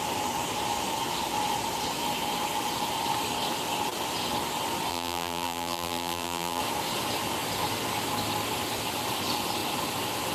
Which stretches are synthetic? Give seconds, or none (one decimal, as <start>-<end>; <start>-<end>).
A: 4.9-6.6